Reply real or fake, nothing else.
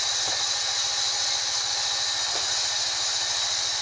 real